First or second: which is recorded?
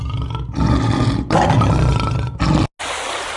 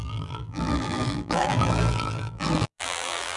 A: first